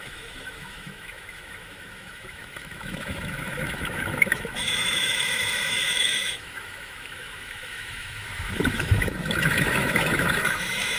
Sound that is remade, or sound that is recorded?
remade